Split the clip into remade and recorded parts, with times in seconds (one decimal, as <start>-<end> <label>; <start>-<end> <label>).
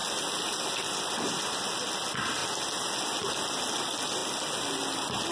0.0-5.3 recorded